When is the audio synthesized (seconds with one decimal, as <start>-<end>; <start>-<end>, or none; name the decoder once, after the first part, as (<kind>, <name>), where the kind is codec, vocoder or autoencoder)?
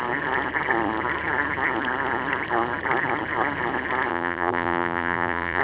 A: 4.1-5.6 (vocoder, BigVGAN v2)